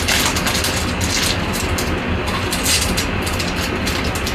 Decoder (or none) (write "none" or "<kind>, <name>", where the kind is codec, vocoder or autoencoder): none